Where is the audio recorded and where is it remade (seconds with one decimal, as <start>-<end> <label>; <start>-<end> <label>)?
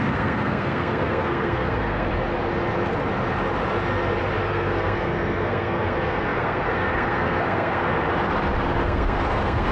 0.0-2.1 remade; 2.1-4.5 recorded; 4.5-7.9 remade; 7.9-8.8 recorded; 8.8-9.7 remade